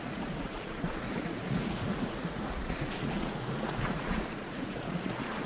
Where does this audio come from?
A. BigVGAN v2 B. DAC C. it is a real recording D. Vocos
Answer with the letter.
D